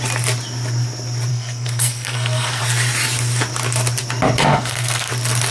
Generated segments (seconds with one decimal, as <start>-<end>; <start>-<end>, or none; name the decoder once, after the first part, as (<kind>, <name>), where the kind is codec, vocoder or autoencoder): 1.3-2.6 (codec, SNAC); 4.5-5.1